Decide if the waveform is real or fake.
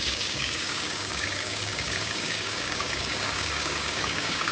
fake